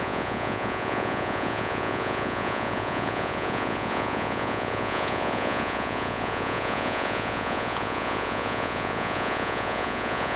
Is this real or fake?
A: fake